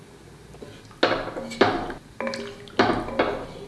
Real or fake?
real